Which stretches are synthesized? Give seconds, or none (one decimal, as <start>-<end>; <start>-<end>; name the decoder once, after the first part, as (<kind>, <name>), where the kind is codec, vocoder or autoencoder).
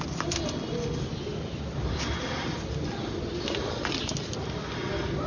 none